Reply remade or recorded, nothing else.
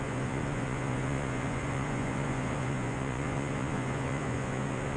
remade